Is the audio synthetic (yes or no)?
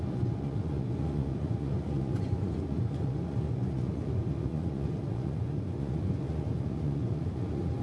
yes